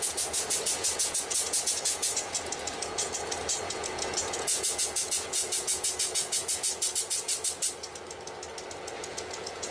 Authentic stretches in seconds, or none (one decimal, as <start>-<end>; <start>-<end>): 7.3-9.0